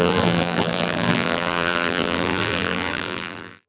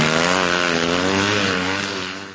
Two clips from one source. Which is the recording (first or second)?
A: second